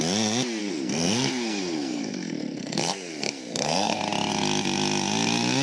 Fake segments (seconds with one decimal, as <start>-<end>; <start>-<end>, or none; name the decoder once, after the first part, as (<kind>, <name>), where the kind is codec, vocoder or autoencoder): 0.6-4.0 (codec, SNAC)